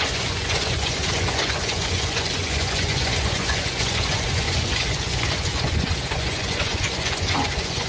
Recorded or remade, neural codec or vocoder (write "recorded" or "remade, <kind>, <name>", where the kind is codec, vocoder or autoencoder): remade, vocoder, Vocos